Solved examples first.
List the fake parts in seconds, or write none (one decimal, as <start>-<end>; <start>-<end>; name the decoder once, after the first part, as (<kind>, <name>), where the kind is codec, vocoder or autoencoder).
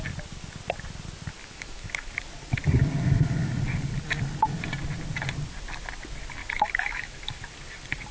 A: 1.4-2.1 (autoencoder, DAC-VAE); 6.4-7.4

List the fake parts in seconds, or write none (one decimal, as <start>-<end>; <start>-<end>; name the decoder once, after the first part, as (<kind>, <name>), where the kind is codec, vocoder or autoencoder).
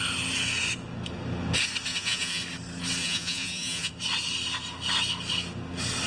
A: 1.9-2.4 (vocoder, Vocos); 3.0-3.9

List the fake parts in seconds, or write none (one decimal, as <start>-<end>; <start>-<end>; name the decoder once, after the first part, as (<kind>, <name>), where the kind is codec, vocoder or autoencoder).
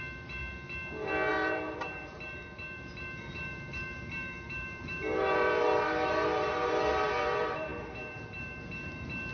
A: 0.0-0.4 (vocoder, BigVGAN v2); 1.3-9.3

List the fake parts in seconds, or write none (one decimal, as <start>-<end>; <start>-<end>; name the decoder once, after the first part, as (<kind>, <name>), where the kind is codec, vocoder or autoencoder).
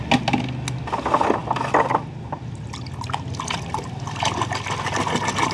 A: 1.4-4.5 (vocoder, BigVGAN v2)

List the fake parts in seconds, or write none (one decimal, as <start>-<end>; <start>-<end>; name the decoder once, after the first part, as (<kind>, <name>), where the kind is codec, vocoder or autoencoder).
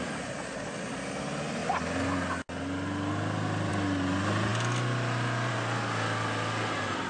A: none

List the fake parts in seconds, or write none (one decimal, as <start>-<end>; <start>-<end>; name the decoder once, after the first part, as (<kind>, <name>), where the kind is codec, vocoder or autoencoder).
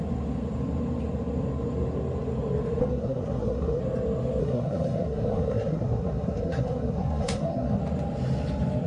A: 2.8-3.8 (codec, SNAC); 4.4-7.8